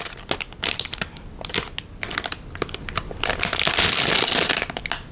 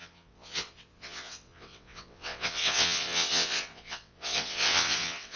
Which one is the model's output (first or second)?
second